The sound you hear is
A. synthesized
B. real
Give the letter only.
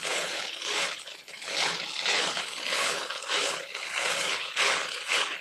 A